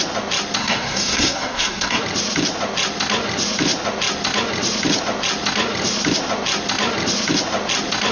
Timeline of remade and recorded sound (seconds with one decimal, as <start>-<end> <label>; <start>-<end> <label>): 0.0-0.6 recorded; 0.6-2.0 remade; 2.0-8.1 recorded